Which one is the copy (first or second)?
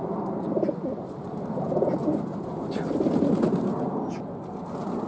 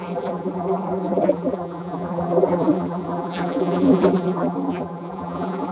second